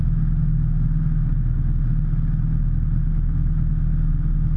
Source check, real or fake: real